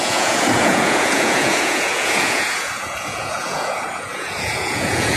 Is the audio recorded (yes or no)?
no